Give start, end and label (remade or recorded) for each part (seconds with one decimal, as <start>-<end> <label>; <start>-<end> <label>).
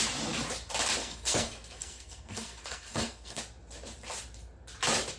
0.0-1.0 recorded; 1.0-3.4 remade; 3.4-5.2 recorded